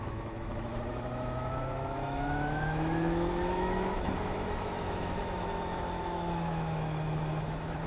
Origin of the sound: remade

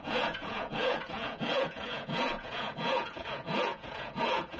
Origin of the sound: remade